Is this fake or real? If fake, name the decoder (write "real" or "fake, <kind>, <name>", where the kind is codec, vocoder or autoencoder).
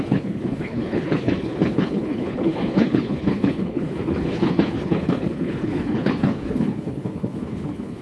fake, codec, HILCodec